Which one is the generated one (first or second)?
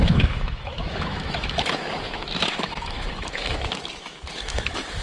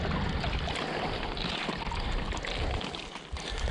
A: first